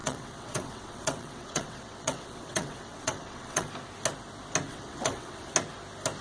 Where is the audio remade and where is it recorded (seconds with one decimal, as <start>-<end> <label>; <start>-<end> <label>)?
0.0-3.7 remade; 3.7-4.7 recorded; 4.7-5.5 remade; 5.5-6.2 recorded